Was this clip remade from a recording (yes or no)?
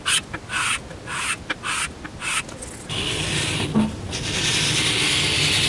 no